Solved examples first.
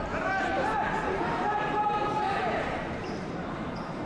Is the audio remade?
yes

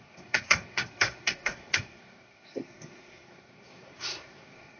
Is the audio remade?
yes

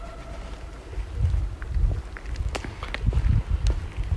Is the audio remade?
no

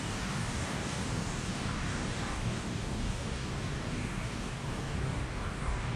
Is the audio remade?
yes